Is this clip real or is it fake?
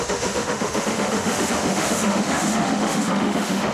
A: fake